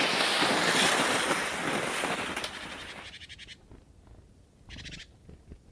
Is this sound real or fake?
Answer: real